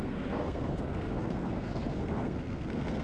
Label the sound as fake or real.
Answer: fake